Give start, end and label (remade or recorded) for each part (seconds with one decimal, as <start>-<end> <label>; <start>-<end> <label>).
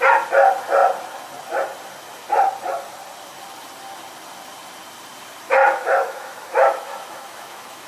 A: 0.0-5.6 recorded; 5.6-7.9 remade